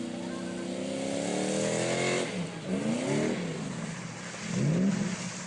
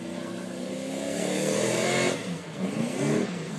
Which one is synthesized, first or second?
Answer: second